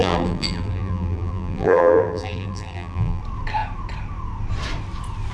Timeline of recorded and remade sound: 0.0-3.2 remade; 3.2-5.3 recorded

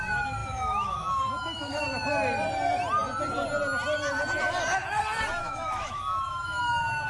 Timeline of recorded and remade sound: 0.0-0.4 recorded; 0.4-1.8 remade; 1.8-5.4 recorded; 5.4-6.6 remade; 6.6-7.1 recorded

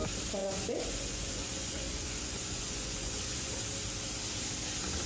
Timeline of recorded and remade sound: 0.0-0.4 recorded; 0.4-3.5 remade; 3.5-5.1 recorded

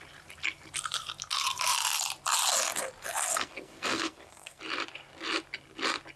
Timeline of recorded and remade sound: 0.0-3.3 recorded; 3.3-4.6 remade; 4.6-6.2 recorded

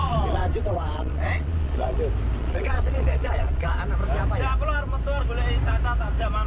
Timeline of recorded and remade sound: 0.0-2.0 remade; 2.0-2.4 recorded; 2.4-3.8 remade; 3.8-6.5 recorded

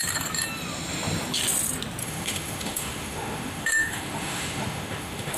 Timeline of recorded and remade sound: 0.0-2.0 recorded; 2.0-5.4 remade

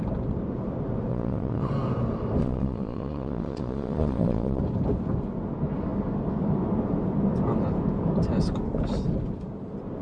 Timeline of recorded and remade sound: 0.0-1.1 recorded; 1.1-1.7 remade; 1.7-2.4 recorded; 2.4-4.6 remade; 4.6-10.0 recorded

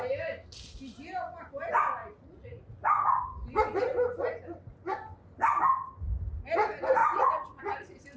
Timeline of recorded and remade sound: 0.0-2.0 recorded; 2.0-2.7 remade; 2.7-7.0 recorded; 7.0-7.6 remade; 7.6-8.2 recorded